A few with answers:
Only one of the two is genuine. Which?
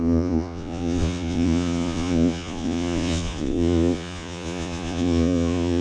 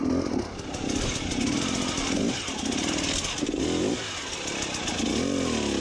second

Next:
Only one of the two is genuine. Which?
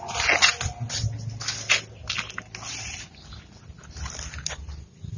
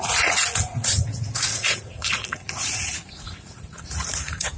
first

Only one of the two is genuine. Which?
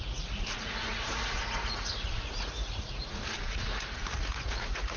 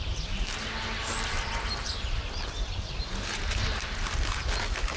second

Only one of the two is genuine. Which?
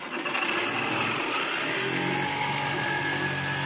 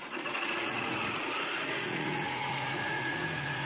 first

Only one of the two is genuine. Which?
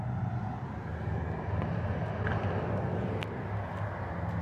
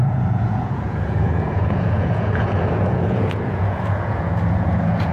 first